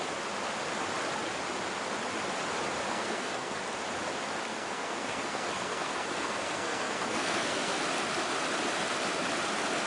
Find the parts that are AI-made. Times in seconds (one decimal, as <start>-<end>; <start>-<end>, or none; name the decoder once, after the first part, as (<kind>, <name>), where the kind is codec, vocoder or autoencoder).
2.9-3.6 (codec, SNAC); 4.5-7.8